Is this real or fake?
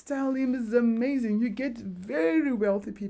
real